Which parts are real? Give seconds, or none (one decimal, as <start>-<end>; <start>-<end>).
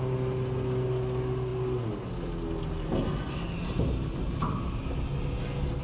0.0-5.8